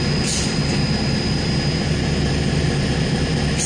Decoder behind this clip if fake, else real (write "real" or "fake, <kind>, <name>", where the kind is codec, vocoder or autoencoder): real